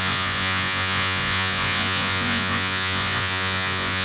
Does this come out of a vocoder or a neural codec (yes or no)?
yes